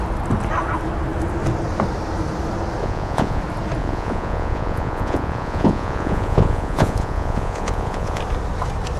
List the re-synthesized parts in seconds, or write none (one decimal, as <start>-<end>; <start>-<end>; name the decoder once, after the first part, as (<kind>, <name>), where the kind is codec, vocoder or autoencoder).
2.8-3.4 (vocoder, Vocos); 3.8-8.2